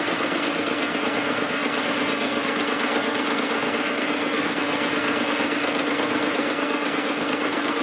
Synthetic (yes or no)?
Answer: yes